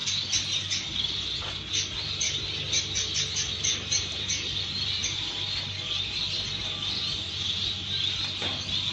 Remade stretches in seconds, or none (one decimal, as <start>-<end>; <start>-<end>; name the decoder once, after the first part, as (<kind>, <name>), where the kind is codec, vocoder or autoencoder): none